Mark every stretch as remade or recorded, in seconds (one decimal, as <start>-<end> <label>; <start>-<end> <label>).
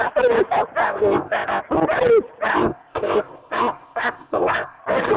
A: 0.0-0.8 recorded; 0.8-1.6 remade; 1.6-2.5 recorded; 2.5-4.8 remade; 4.8-5.2 recorded